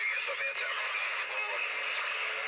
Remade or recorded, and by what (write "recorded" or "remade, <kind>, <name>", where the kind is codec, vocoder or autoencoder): recorded